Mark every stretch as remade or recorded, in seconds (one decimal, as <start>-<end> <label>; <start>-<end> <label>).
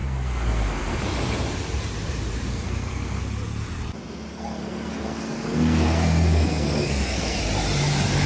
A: 0.0-1.0 remade; 1.0-2.5 recorded; 2.5-3.2 remade; 3.2-4.3 recorded; 4.3-7.4 remade; 7.4-8.3 recorded